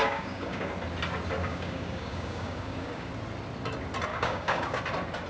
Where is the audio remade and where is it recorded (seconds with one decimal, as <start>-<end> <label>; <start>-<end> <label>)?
0.0-0.7 remade; 0.7-1.4 recorded; 1.4-3.1 remade; 3.1-4.1 recorded; 4.1-4.8 remade; 4.8-5.3 recorded